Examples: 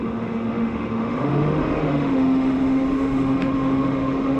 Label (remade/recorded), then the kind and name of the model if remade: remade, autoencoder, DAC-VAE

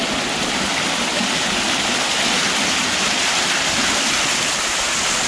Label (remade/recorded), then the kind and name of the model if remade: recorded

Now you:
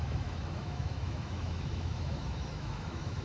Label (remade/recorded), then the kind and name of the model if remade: remade, autoencoder, DAC-VAE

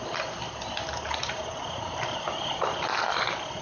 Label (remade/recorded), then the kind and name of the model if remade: recorded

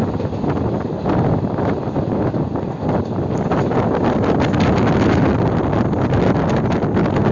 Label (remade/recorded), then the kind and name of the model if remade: recorded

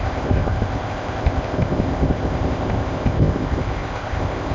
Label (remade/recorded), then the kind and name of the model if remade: remade, codec, ZipCodec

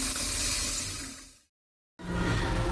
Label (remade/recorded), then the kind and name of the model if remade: recorded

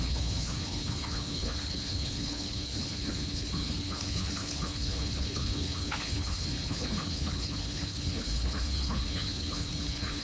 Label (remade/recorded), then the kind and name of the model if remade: remade, codec, HILCodec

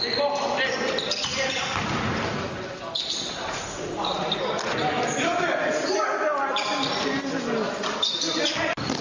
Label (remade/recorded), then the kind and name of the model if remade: remade, vocoder, BigVGAN v2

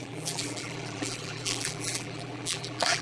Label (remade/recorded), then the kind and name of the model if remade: remade, vocoder, BigVGAN v2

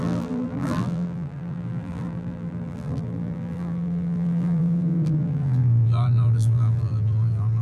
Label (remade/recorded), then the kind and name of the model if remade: remade, vocoder, BigVGAN v2